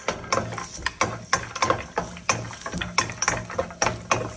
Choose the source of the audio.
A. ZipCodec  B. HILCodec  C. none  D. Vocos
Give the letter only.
C